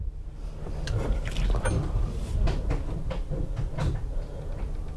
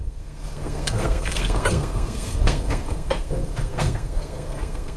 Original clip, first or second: first